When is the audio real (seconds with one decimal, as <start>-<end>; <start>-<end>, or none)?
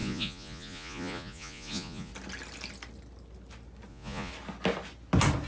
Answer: 2.1-3.9; 4.3-5.5